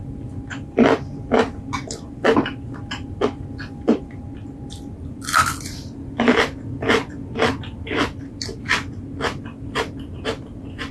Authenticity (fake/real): real